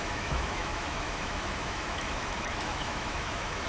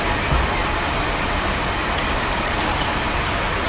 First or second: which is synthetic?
first